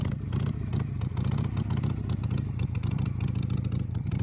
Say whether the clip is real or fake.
real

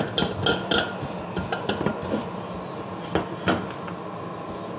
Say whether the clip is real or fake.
real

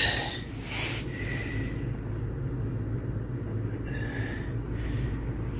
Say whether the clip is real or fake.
real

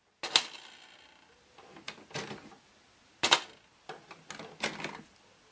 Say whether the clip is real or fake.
real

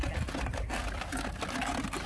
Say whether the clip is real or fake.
real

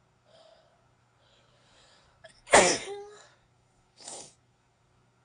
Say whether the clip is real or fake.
fake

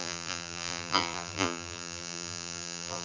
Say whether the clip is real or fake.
fake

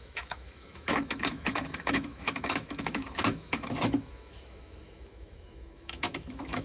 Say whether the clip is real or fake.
fake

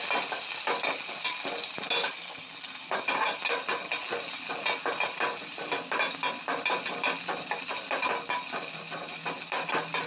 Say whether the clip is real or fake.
real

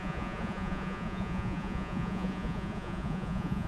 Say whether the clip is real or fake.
fake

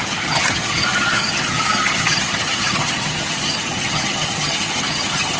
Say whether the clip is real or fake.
fake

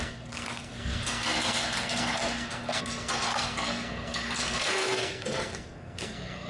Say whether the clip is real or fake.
fake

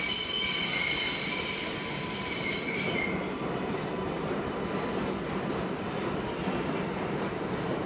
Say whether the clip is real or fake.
real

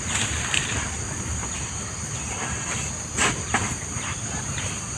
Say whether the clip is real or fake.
fake